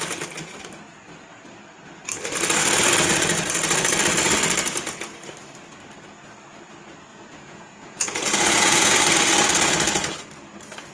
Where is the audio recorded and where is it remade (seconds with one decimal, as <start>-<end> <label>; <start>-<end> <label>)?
0.0-7.1 recorded; 7.1-9.0 remade; 9.0-10.9 recorded